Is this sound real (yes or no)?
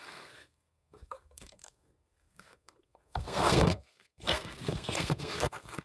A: no